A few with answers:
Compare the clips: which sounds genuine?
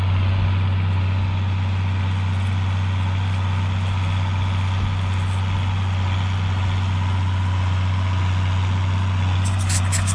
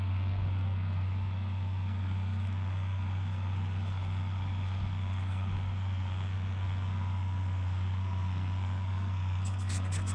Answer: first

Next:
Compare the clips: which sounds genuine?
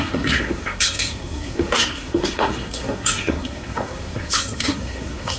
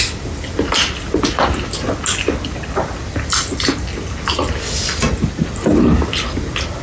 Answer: second